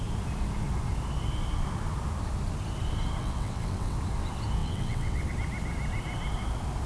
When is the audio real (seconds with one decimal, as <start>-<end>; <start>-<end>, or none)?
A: 0.0-3.2; 4.0-4.6; 5.3-6.9